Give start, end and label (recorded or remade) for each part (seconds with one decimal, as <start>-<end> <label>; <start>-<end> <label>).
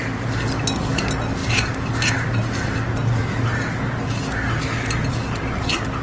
0.0-1.4 recorded; 1.4-1.9 remade; 1.9-6.0 recorded